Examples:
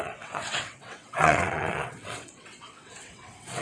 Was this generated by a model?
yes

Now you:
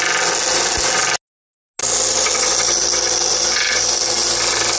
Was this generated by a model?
no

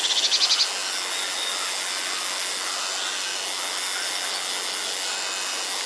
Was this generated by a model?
no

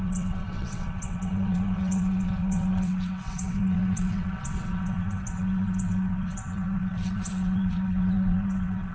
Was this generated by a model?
yes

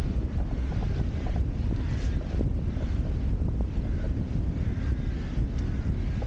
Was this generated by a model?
no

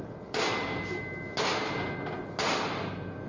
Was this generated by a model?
no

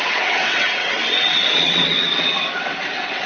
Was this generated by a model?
yes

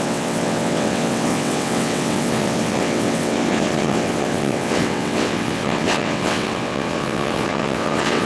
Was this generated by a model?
yes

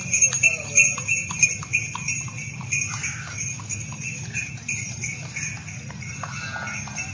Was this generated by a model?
no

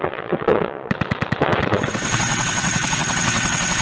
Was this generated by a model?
yes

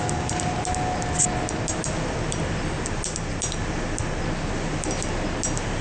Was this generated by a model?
no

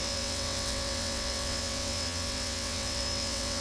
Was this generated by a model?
yes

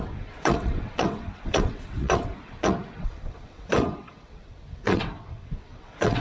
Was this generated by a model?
yes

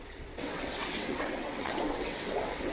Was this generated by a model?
yes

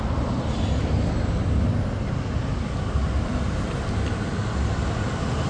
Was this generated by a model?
no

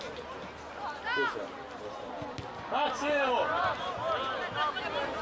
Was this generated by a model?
no